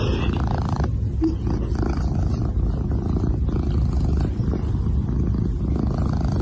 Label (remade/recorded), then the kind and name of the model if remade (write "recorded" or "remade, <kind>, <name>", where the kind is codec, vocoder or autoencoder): recorded